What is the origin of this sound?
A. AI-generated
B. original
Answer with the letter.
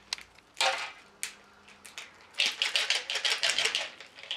B